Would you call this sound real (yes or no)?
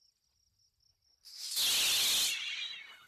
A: yes